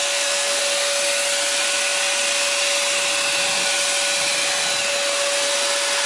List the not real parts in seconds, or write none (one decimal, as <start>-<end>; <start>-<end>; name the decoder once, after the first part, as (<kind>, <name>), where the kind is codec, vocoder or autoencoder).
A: 0.0-0.6 (codec, SNAC)